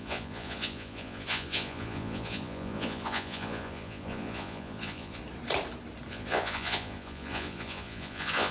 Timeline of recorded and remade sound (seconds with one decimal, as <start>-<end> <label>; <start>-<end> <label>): 0.0-5.2 remade; 5.2-6.1 recorded; 6.1-8.5 remade